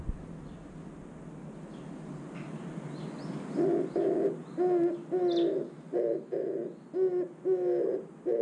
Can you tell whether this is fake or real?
real